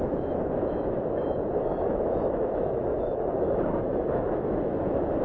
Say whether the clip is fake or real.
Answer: fake